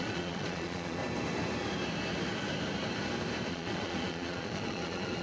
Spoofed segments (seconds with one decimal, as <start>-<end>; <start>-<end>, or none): 0.0-1.0; 3.5-5.2